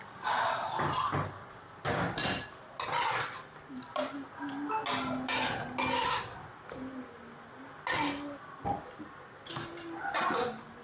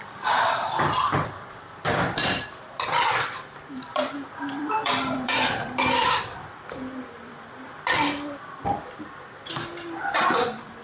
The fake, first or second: second